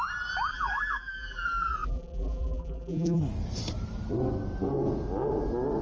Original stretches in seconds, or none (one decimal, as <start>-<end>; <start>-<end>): 0.0-0.5; 3.2-5.8